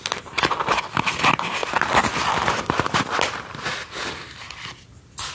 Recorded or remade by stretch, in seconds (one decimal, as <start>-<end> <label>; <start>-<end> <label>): 0.0-5.3 recorded